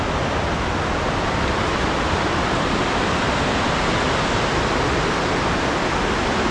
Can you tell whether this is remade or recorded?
recorded